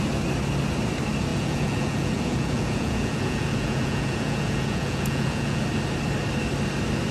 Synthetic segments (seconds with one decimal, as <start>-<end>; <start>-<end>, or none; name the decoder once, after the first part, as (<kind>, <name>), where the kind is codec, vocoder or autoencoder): 1.3-5.6 (vocoder, Vocos)